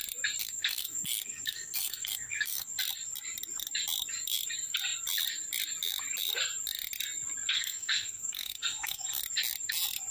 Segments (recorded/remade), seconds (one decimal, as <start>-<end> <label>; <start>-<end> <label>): 0.0-0.4 recorded; 0.4-2.7 remade; 2.7-7.5 recorded; 7.5-9.2 remade; 9.2-10.1 recorded